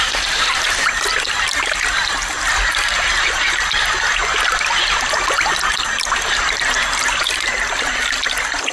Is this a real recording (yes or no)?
yes